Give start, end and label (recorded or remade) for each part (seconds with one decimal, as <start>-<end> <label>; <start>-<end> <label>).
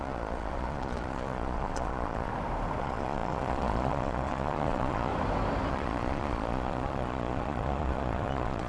0.0-2.3 remade; 2.3-2.8 recorded; 2.8-5.1 remade; 5.1-5.7 recorded; 5.7-8.7 remade